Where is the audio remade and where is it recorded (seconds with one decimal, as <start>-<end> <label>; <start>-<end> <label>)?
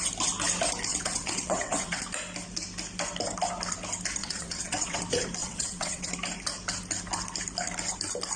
0.0-0.9 recorded; 0.9-2.0 remade; 2.0-4.2 recorded; 4.2-5.0 remade; 5.0-5.4 recorded; 5.4-6.1 remade; 6.1-8.4 recorded